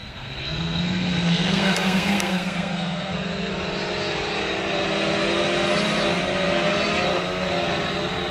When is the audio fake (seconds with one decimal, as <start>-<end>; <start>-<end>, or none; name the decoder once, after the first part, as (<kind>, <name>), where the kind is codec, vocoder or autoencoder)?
0.0-3.5 (codec, SNAC)